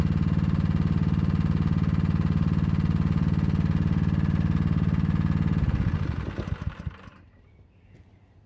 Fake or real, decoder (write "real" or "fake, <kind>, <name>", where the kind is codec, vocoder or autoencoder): real